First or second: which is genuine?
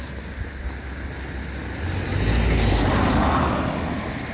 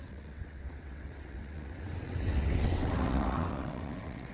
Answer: first